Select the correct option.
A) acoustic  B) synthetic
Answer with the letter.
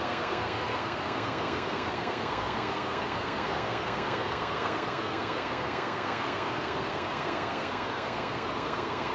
B